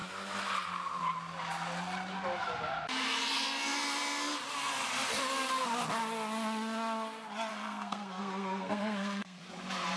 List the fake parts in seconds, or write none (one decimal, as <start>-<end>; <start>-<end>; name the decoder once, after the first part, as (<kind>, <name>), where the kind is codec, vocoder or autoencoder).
7.5-9.4 (codec, SNAC)